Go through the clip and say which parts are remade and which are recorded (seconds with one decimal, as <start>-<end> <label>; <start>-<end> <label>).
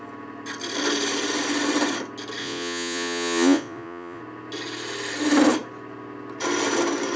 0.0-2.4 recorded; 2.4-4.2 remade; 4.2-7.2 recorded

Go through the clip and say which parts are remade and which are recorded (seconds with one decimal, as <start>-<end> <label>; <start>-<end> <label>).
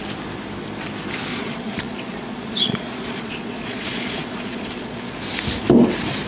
0.0-1.3 recorded; 1.3-5.1 remade; 5.1-6.3 recorded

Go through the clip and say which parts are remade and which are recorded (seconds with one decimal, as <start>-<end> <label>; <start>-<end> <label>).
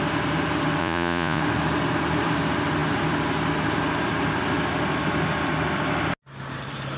0.0-0.8 recorded; 0.8-1.4 remade; 1.4-7.0 recorded